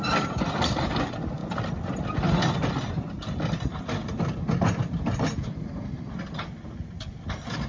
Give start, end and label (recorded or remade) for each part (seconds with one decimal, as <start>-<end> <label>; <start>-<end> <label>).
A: 0.0-7.7 recorded